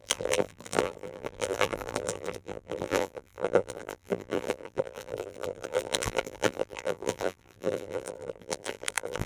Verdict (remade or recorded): remade